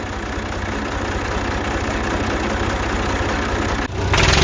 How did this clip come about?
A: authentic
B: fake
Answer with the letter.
A